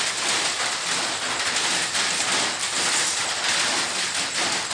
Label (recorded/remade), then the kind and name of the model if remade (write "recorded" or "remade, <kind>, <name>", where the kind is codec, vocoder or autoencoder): recorded